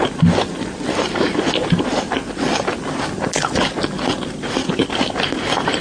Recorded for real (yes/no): yes